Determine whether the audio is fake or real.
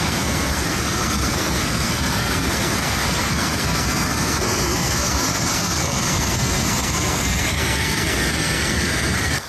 fake